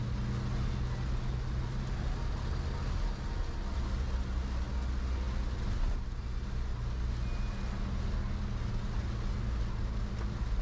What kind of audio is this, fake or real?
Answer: real